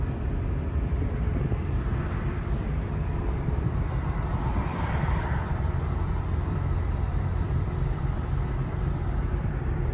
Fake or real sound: fake